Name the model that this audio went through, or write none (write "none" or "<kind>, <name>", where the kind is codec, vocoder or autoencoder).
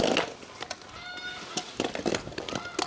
none